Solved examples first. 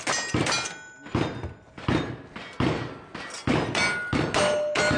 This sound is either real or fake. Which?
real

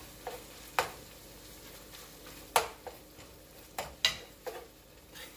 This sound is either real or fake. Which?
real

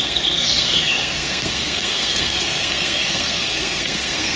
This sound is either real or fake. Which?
fake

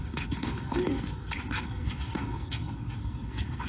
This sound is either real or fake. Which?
fake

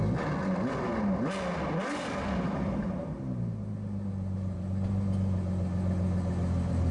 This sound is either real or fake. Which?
real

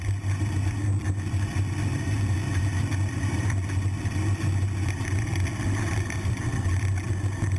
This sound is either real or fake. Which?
real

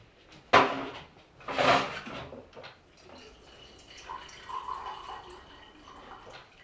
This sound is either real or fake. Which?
real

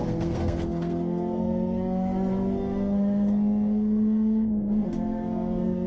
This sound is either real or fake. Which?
fake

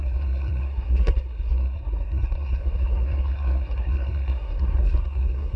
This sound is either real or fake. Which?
fake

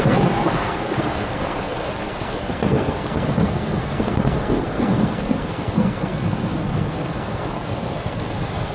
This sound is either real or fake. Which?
fake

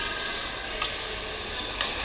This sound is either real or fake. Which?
real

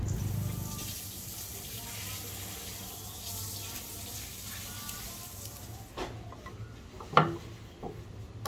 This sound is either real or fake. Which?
real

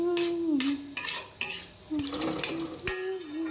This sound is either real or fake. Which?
real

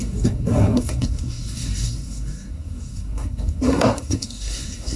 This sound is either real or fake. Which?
fake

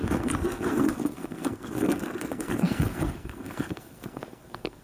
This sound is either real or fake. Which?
fake